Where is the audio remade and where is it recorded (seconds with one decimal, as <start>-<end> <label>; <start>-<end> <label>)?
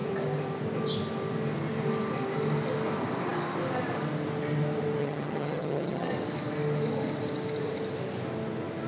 0.0-5.0 recorded; 5.0-6.1 remade; 6.1-8.9 recorded